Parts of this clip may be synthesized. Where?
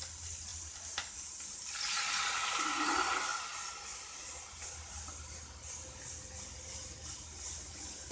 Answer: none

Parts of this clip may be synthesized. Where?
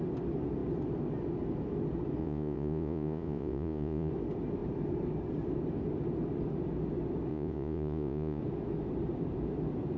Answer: 2.2-4.1; 7.3-8.4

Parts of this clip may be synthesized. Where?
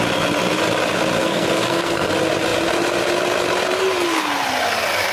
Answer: 1.2-2.1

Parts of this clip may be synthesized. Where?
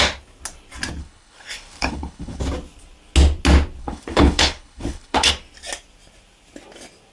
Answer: 1.0-2.4; 3.8-5.3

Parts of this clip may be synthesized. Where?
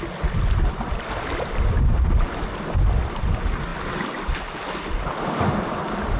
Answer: none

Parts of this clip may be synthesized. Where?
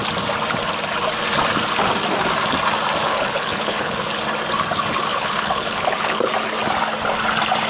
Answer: 3.1-4.1; 5.1-6.3